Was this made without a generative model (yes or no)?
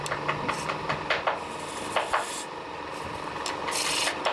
yes